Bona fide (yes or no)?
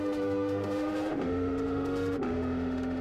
no